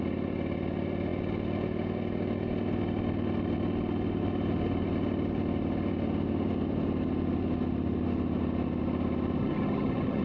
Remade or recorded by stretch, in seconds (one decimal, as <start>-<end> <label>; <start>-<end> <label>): 0.0-9.4 recorded; 9.4-10.2 remade